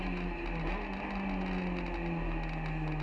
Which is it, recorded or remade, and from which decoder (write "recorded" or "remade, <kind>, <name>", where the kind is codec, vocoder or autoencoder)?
recorded